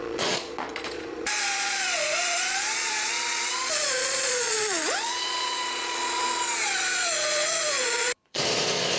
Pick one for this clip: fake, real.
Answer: fake